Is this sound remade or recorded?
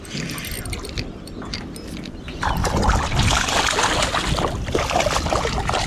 recorded